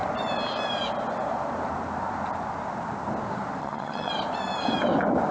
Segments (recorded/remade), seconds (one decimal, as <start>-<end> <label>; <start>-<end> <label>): 0.0-3.6 recorded; 3.6-4.1 remade; 4.1-5.3 recorded